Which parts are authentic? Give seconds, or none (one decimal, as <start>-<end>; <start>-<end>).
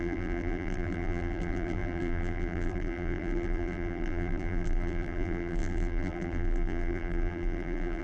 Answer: none